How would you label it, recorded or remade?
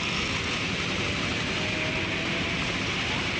recorded